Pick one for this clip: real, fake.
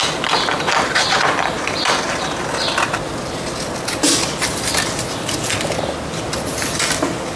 real